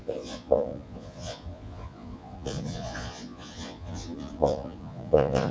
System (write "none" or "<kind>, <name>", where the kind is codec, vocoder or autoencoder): vocoder, Vocos